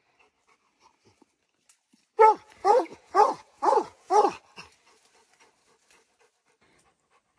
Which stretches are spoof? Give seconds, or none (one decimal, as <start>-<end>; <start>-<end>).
2.6-4.1

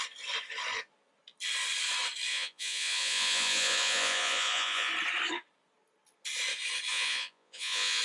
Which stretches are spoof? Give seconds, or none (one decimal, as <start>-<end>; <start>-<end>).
2.3-4.9; 6.9-8.0

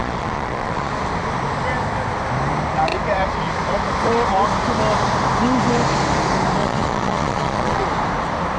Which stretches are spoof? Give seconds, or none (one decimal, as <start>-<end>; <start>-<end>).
0.0-0.9; 6.6-7.8

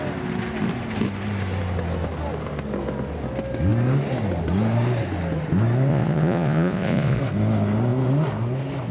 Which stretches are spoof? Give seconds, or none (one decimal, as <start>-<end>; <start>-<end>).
5.9-7.2

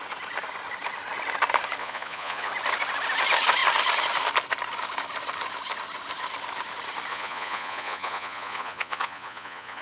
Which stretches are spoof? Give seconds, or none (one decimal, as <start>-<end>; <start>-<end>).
1.8-2.5; 7.1-9.8

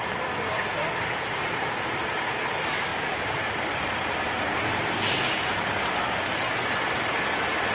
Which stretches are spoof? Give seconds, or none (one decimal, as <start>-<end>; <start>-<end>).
none